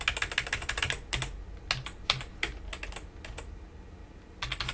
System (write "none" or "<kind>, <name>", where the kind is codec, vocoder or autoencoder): none